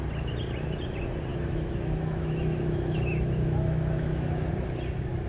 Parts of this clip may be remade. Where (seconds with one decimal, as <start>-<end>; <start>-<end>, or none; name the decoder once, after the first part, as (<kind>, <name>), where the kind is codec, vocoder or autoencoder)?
1.3-4.5 (autoencoder, DAC-VAE)